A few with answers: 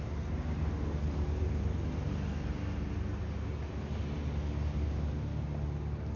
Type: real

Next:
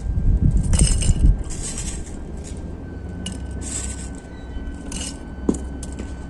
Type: real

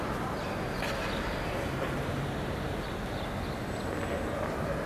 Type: real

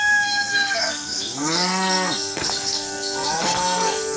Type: fake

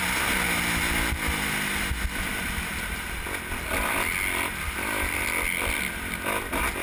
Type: real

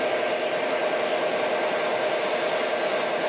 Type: real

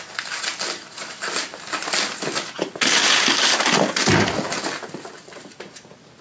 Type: real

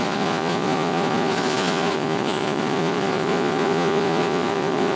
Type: fake